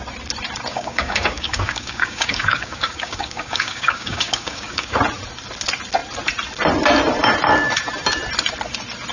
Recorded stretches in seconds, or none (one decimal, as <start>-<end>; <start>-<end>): 0.0-0.7; 5.0-9.1